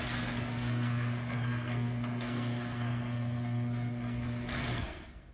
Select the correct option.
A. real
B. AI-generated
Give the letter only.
B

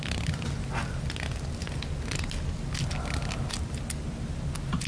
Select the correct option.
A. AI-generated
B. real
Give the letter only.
B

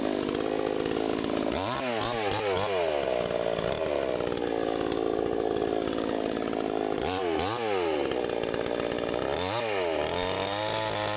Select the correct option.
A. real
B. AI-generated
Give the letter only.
A